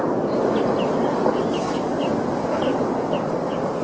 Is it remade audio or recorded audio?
recorded